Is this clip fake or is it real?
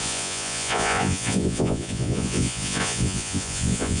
fake